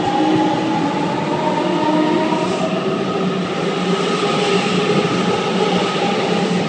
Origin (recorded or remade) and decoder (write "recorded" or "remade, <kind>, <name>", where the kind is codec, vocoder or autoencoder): recorded